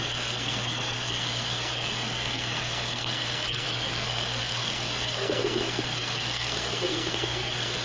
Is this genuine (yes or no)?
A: no